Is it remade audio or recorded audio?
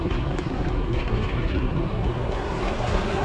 remade